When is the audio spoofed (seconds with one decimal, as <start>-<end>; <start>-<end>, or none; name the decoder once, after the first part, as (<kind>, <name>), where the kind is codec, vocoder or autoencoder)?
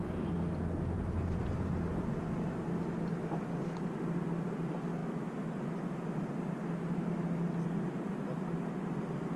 none